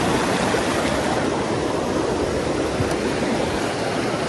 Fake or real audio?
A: real